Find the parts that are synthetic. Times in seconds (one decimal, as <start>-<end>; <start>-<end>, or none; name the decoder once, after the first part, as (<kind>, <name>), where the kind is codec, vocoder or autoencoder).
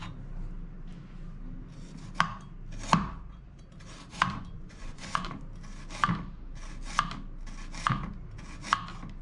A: 4.1-5.4 (vocoder, Vocos)